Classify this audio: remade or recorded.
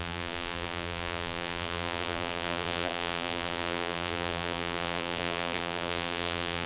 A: remade